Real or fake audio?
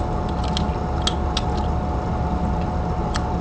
real